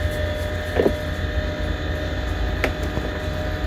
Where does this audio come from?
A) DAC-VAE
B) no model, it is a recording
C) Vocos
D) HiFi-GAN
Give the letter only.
B